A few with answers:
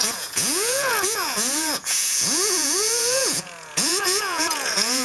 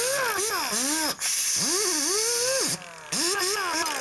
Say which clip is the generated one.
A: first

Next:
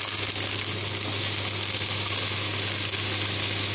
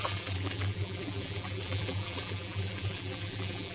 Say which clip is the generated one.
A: second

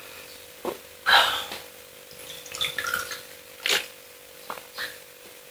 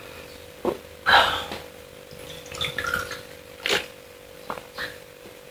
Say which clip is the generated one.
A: second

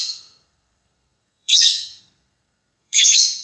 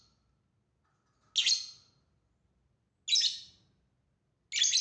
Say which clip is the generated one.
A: first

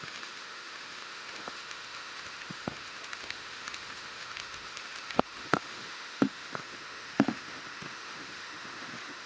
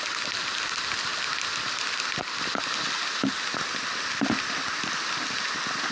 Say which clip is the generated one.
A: first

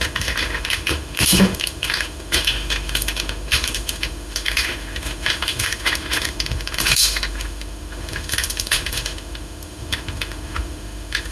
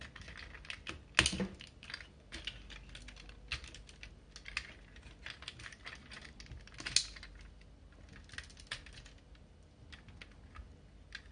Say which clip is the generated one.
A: first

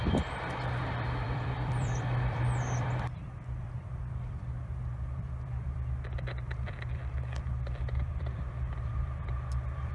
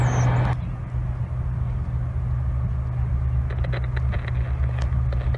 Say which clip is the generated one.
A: first